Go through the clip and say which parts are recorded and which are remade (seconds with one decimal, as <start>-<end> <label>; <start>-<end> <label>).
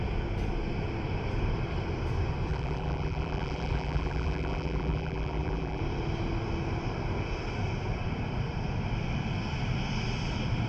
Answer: 0.0-2.5 recorded; 2.5-5.8 remade; 5.8-10.7 recorded